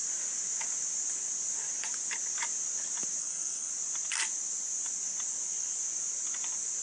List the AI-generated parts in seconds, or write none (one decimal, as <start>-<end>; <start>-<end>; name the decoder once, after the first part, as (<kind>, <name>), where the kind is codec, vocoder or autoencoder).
3.2-3.7 (codec, SNAC)